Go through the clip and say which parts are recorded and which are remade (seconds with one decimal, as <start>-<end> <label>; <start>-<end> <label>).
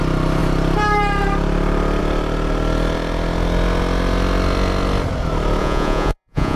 0.0-5.6 recorded; 5.6-6.6 remade